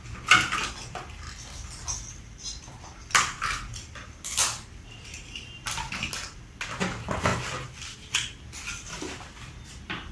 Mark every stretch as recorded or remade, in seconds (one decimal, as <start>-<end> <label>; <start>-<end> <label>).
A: 0.0-10.1 recorded